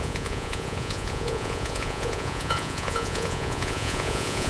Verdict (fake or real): fake